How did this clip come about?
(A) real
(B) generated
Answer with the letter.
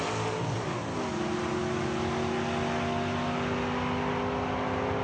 A